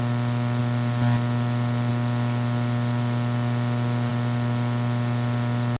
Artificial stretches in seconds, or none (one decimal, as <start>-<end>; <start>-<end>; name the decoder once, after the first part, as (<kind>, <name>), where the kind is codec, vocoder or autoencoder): none